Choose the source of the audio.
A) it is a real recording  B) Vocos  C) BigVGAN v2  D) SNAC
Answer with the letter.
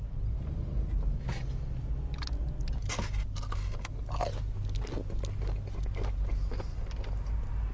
A